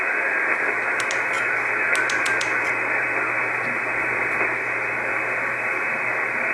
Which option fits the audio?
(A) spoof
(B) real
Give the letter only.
B